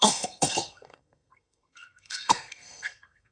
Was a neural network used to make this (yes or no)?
yes